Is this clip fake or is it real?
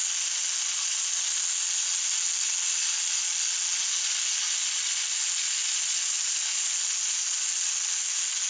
real